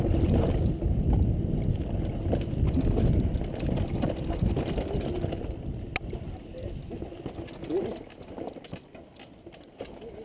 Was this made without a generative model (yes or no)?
yes